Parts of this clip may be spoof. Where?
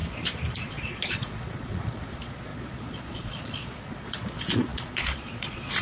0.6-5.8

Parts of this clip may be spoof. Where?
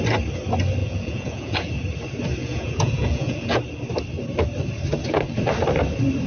0.8-1.7; 2.4-3.6